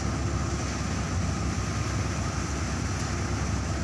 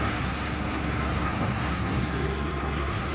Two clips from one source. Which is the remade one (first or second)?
second